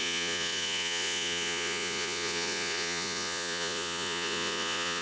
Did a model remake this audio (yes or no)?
yes